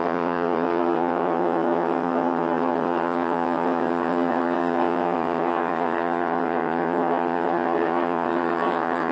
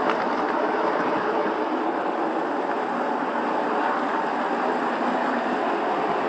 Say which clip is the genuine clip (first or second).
second